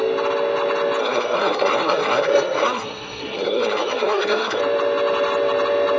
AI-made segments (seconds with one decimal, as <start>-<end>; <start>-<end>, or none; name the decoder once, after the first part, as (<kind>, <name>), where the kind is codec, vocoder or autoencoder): 1.0-4.6 (codec, SNAC)